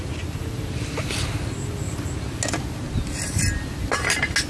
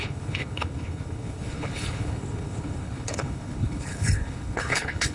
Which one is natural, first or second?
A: first